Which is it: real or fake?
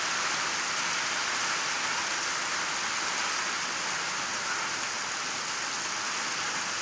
real